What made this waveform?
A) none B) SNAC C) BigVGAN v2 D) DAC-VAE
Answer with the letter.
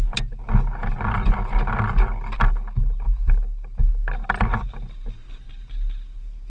A